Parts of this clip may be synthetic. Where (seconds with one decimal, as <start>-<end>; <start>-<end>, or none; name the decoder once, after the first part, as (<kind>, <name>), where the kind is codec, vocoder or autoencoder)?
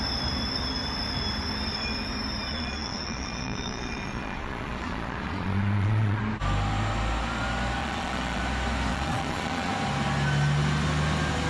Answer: 2.5-6.2 (vocoder, Vocos); 7.8-8.4; 8.9-9.7